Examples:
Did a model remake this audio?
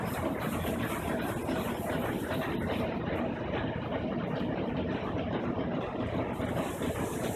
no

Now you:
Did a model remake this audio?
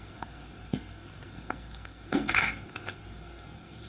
yes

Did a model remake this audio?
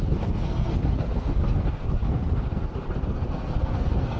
yes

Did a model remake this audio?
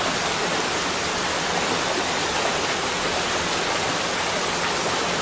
no